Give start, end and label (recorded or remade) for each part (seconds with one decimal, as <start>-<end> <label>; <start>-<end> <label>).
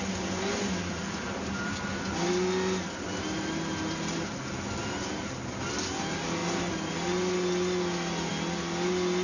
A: 0.0-9.2 recorded